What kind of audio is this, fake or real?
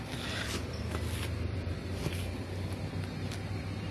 fake